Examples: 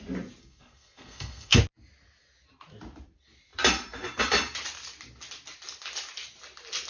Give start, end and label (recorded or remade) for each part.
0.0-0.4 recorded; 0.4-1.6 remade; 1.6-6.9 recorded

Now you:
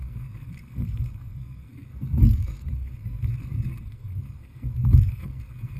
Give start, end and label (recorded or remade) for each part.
0.0-5.8 remade

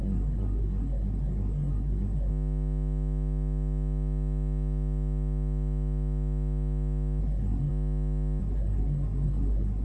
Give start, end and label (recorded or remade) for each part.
0.0-2.3 remade; 2.3-7.2 recorded; 7.2-7.7 remade; 7.7-8.4 recorded; 8.4-9.8 remade

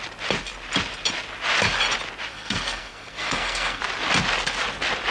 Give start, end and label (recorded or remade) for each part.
0.0-2.3 recorded; 2.3-3.8 remade; 3.8-5.1 recorded

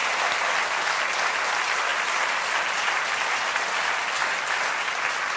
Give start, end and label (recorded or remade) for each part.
0.0-5.4 recorded

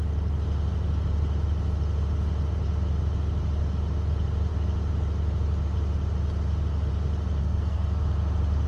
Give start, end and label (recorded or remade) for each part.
0.0-7.4 recorded; 7.4-8.0 remade; 8.0-8.7 recorded

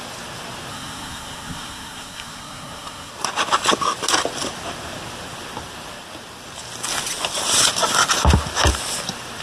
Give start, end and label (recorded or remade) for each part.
0.0-0.7 recorded; 0.7-3.1 remade; 3.1-9.4 recorded